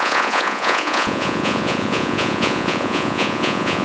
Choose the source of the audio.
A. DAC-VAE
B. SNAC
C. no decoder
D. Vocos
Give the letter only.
D